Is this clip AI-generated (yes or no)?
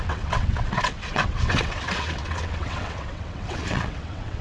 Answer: yes